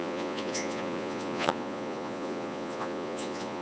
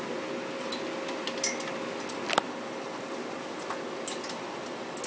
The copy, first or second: first